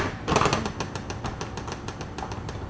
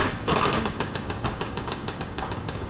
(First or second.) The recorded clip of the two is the first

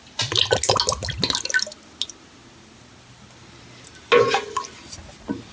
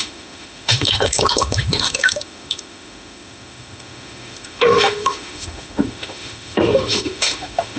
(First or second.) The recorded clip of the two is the first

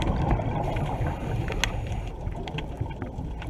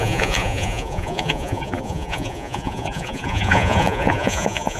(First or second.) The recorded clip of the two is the first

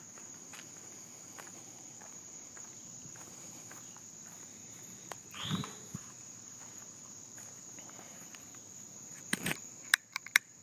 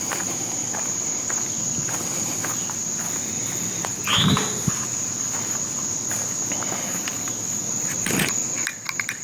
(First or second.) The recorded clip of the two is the second